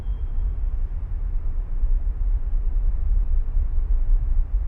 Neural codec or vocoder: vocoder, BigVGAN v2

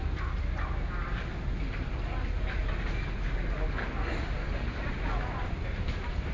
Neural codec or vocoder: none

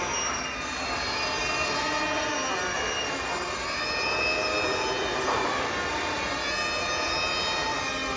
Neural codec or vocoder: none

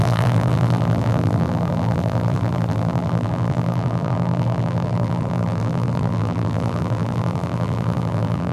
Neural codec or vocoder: vocoder, BigVGAN v2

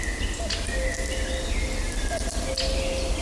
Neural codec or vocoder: none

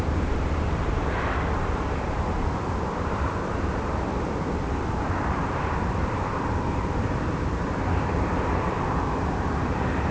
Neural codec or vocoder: vocoder, BigVGAN v2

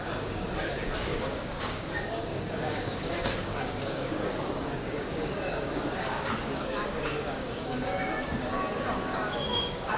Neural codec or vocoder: codec, DAC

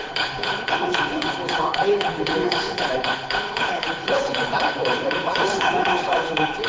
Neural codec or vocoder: codec, HILCodec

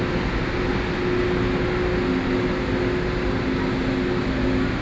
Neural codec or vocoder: none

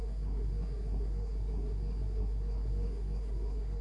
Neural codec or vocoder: codec, SNAC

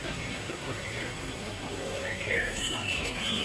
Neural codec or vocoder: codec, SNAC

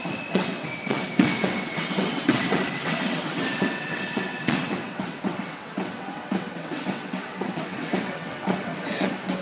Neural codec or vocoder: vocoder, WaveNeXt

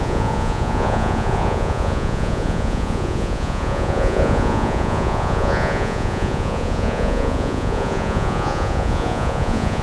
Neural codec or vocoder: vocoder, Vocos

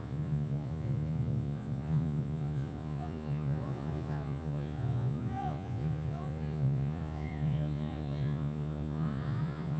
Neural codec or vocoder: vocoder, Vocos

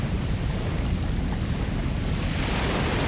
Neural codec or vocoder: none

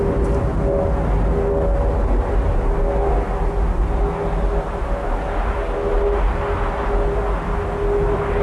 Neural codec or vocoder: none